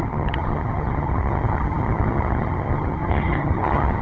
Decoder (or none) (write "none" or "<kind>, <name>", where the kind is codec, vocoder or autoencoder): vocoder, HiFi-GAN